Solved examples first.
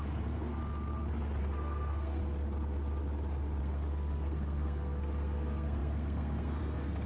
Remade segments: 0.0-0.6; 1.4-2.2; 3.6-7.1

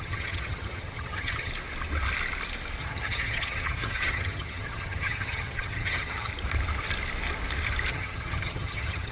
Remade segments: 0.0-1.5; 2.8-6.3; 7.9-9.1